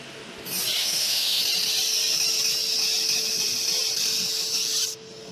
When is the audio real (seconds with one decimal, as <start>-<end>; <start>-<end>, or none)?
0.0-0.8; 1.4-5.3